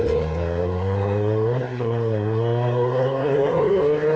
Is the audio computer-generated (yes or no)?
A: yes